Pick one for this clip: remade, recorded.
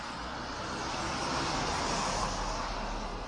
recorded